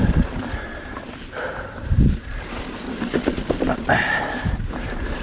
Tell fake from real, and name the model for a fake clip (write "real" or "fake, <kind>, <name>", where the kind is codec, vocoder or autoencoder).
fake, vocoder, BigVGAN v2